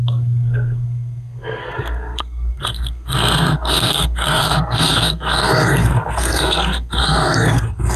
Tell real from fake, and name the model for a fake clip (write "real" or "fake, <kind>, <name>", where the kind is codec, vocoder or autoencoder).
fake, codec, SNAC